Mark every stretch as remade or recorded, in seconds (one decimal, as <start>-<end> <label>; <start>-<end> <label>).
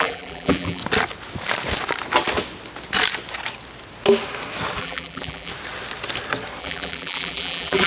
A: 0.0-0.8 remade; 0.8-4.8 recorded; 4.8-5.5 remade; 5.5-6.6 recorded; 6.6-7.9 remade